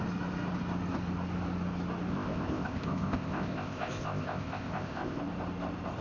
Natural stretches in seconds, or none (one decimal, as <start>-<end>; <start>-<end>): 0.0-2.1; 5.2-6.0